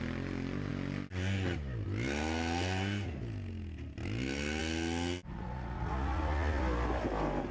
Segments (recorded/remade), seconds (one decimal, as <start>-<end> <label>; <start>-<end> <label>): 0.0-5.3 recorded; 5.3-6.6 remade; 6.6-7.5 recorded